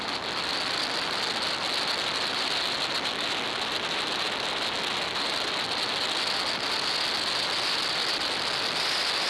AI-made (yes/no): no